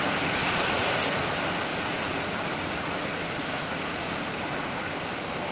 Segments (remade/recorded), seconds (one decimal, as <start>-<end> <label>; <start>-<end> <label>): 0.0-0.4 recorded; 0.4-1.2 remade; 1.2-1.7 recorded; 1.7-5.0 remade; 5.0-5.5 recorded